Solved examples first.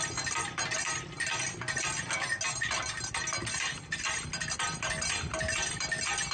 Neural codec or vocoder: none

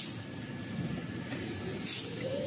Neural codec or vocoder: none